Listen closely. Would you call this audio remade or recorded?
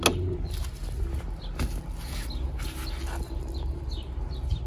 recorded